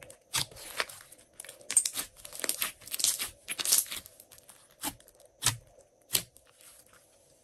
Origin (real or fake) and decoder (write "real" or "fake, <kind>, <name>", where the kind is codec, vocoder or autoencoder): real